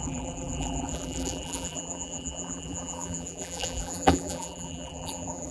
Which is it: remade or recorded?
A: remade